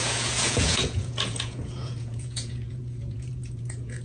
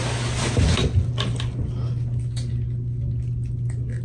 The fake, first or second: first